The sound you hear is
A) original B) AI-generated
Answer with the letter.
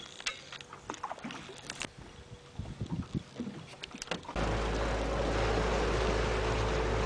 A